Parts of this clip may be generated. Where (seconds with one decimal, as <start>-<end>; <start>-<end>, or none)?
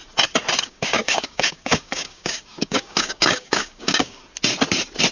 0.6-4.2